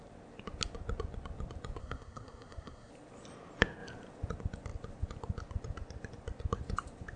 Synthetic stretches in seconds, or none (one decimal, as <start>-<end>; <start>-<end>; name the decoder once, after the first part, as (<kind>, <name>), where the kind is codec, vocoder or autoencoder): 1.8-2.9 (codec, SNAC)